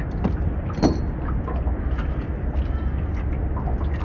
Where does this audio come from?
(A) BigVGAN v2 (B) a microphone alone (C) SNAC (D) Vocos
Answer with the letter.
B